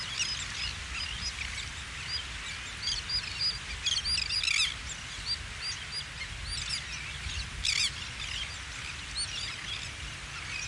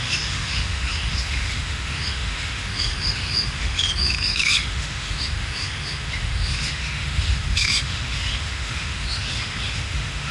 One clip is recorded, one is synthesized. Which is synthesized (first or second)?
second